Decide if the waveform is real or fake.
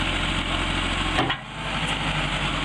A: real